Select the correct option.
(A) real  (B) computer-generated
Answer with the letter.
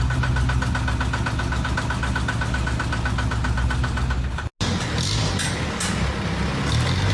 A